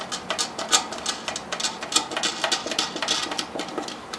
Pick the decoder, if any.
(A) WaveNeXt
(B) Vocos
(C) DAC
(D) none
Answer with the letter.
D